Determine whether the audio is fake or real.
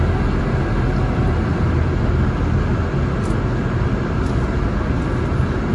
real